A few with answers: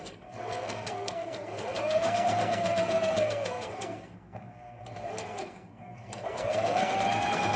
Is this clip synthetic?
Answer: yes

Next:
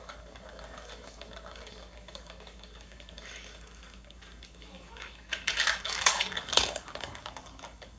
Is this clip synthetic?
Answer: yes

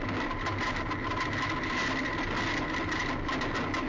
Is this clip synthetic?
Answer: no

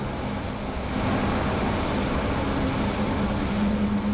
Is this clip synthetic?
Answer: no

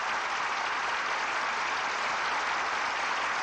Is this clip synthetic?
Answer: no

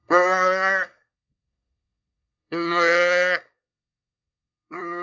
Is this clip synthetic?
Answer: yes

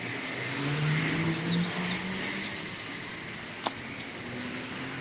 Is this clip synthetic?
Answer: no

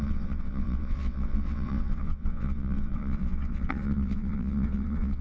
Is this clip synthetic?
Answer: yes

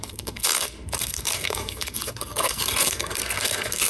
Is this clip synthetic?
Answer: yes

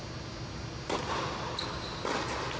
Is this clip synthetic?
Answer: no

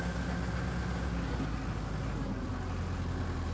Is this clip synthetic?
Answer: no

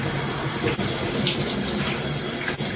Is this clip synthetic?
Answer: no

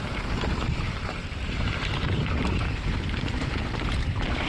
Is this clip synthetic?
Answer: yes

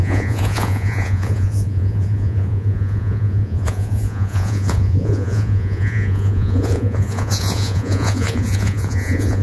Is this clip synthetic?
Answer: yes